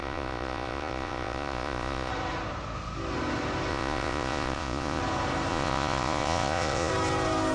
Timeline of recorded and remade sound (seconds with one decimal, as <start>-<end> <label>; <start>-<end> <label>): 0.0-2.1 remade; 2.1-3.7 recorded; 3.7-5.0 remade; 5.0-5.5 recorded; 5.5-6.9 remade; 6.9-7.5 recorded